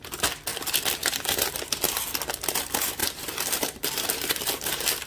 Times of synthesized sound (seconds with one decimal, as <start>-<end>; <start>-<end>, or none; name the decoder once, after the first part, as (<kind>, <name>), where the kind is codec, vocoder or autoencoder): 3.0-4.5 (vocoder, BigVGAN v2)